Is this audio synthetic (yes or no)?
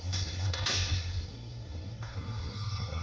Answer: yes